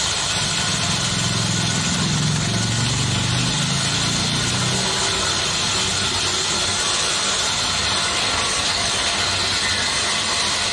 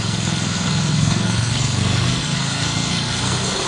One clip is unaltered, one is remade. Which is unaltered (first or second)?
first